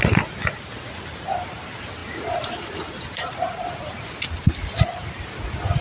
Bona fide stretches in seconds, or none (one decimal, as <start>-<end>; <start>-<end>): 0.0-5.8